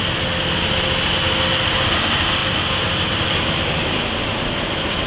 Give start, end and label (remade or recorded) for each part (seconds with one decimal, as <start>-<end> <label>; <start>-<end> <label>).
0.0-5.1 recorded

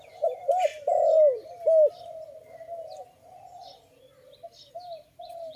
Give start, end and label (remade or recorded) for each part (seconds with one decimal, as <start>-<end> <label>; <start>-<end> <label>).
0.0-0.7 recorded; 0.7-1.5 remade; 1.5-5.6 recorded